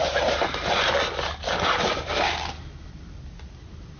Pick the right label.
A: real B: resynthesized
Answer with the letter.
A